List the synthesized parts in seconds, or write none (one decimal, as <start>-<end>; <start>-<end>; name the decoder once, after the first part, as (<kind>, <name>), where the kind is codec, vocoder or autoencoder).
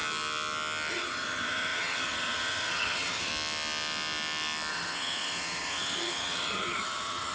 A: 0.9-3.3 (vocoder, HiFi-GAN); 4.7-7.3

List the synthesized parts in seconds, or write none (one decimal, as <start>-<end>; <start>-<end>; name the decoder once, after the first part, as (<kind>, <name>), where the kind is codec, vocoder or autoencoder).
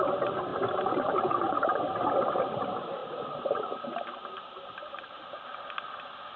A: 0.5-2.1 (vocoder, BigVGAN v2); 3.0-5.6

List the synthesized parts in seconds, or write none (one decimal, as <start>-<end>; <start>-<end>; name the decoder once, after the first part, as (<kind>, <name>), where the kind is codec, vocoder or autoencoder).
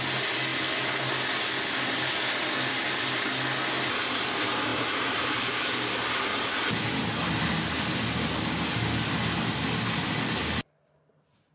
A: 4.7-5.5 (vocoder, BigVGAN v2)